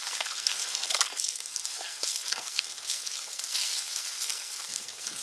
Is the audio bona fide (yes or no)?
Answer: no